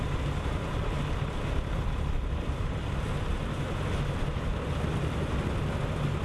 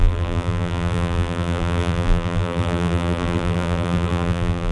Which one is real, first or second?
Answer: first